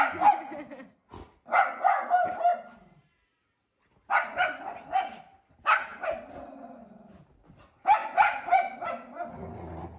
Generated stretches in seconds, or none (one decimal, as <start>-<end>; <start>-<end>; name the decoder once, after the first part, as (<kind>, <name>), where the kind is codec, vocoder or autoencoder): none